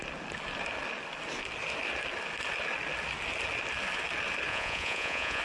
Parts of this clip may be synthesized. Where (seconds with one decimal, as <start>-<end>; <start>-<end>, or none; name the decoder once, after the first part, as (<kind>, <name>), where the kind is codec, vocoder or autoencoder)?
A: 4.5-5.4 (vocoder, Vocos)